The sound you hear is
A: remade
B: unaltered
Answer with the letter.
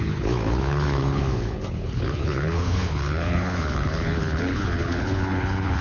A